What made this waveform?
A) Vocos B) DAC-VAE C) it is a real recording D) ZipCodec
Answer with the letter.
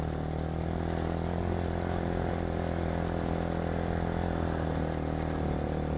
C